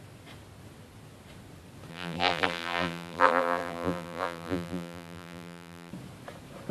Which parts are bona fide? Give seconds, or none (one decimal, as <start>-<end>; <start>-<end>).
0.0-1.9; 5.9-6.7